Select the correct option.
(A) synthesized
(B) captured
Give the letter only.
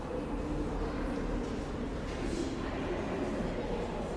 B